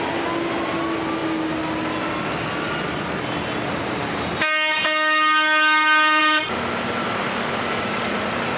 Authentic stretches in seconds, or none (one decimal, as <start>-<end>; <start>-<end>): 0.0-8.6